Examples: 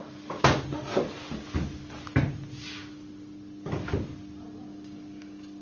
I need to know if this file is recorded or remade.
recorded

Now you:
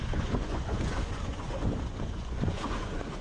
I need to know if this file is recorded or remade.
remade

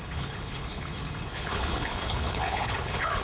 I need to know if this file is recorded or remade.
remade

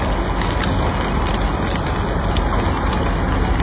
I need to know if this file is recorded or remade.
recorded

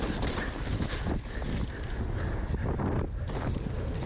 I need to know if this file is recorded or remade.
recorded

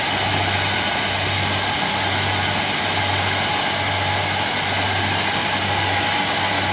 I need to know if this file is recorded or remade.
recorded